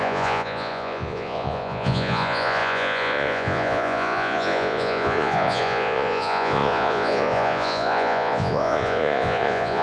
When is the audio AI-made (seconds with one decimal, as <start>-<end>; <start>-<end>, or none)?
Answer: 0.0-9.8